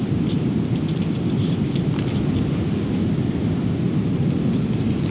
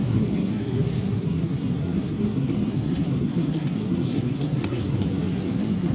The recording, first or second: first